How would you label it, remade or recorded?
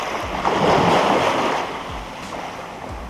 recorded